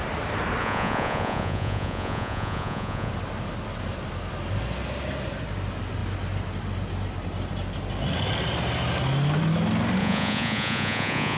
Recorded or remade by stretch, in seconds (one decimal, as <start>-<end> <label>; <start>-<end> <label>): 0.0-0.6 recorded; 0.6-3.1 remade; 3.1-10.0 recorded; 10.0-11.4 remade